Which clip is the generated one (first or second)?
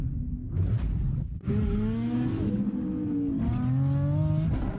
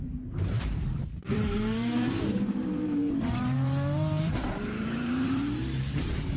second